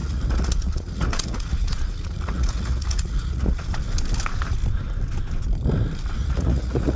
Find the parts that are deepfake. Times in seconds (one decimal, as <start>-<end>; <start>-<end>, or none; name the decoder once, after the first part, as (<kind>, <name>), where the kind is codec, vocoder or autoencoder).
0.0-3.7 (vocoder, Vocos); 6.2-7.0